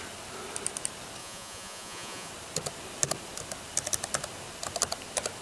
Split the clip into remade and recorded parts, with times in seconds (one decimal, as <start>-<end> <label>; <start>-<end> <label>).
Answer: 0.0-1.2 recorded; 1.2-2.3 remade; 2.3-5.4 recorded